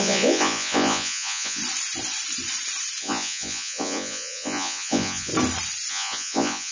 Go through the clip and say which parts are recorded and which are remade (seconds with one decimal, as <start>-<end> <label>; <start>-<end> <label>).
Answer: 0.0-1.6 remade; 1.6-3.0 recorded; 3.0-5.3 remade; 5.3-5.9 recorded; 5.9-6.7 remade